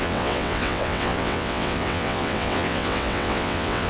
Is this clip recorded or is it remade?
remade